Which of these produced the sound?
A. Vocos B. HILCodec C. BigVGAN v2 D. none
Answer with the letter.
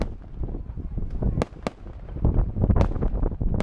D